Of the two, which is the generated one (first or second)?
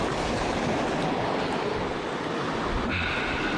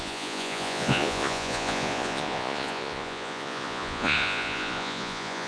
second